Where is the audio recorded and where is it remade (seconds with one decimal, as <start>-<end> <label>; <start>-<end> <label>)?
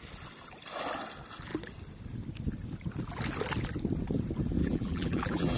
0.0-4.6 recorded; 4.6-5.6 remade